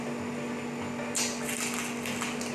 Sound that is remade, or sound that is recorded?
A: recorded